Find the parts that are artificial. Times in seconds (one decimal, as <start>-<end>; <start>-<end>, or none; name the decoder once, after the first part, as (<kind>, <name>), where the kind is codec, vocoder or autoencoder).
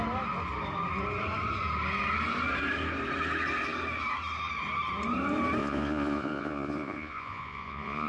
5.6-8.1 (vocoder, Vocos)